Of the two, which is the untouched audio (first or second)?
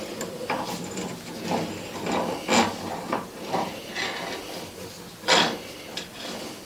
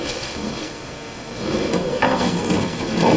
first